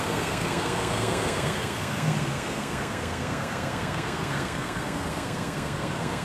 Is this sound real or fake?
fake